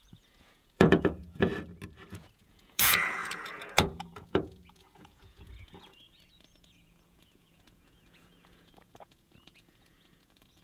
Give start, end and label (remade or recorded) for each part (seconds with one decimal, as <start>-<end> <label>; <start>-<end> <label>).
0.0-1.5 remade; 1.5-2.1 recorded; 2.1-10.6 remade